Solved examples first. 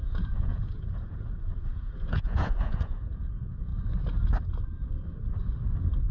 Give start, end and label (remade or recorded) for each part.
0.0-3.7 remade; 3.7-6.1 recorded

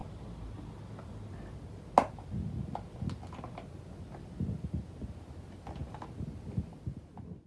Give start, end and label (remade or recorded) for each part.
0.0-7.5 recorded

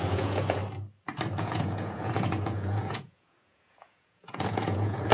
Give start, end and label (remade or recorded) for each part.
0.0-0.6 remade; 0.6-1.4 recorded; 1.4-5.1 remade

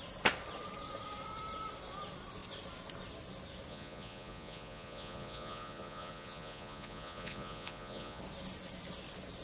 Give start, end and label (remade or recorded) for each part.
0.0-3.7 recorded; 3.7-8.2 remade; 8.2-9.4 recorded

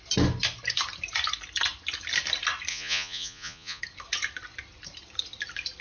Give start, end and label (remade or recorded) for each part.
0.0-2.7 recorded; 2.7-3.8 remade; 3.8-5.8 recorded

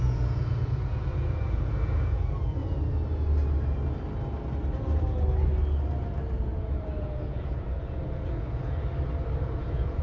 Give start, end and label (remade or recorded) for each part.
0.0-2.6 remade; 2.6-6.6 recorded; 6.6-8.9 remade; 8.9-9.4 recorded; 9.4-10.0 remade